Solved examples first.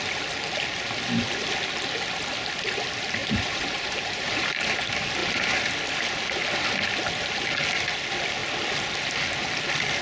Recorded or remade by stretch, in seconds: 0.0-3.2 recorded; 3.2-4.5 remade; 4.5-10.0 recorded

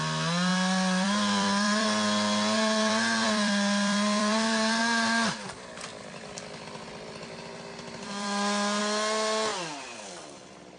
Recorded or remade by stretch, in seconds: 0.0-0.5 recorded; 0.5-4.8 remade; 4.8-5.9 recorded; 5.9-8.8 remade; 8.8-9.5 recorded; 9.5-10.8 remade

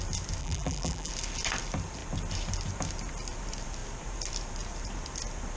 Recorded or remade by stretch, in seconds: 0.0-0.4 recorded; 0.4-1.1 remade; 1.1-5.6 recorded

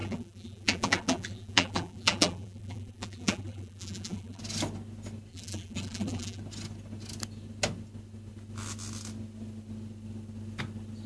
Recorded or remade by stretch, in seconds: 0.0-4.4 remade; 4.4-5.3 recorded; 5.3-6.4 remade; 6.4-11.1 recorded